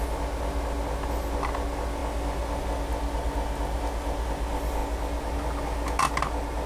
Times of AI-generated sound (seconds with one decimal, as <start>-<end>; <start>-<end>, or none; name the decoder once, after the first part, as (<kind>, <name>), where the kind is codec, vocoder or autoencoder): none